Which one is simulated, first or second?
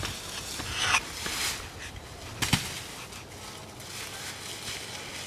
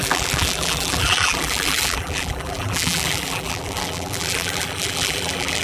second